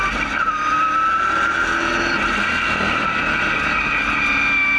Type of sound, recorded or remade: recorded